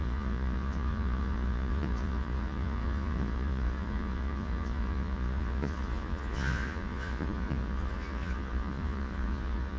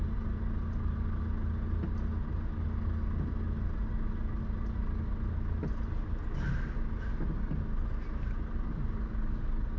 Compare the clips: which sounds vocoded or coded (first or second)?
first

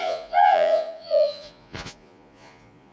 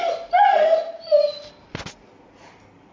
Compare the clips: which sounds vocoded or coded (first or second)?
first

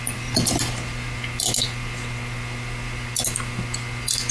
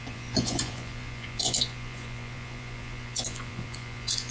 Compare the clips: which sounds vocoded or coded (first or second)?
second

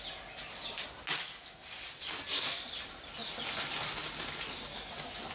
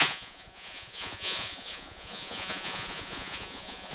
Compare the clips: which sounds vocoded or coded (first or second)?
second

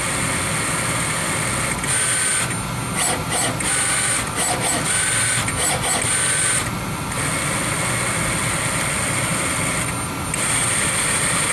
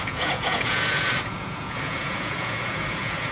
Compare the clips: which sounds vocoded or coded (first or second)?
second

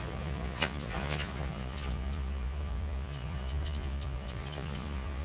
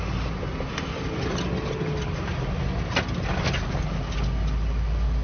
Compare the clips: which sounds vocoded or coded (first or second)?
first